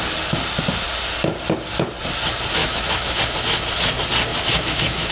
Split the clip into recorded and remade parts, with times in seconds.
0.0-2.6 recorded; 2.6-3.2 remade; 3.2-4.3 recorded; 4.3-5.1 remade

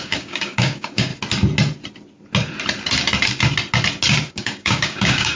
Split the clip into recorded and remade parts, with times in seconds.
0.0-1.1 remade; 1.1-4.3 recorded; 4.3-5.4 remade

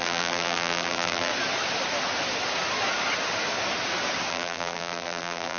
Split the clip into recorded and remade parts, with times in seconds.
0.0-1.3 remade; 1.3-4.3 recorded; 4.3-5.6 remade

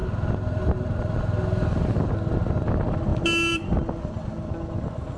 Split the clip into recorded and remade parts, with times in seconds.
0.0-5.2 recorded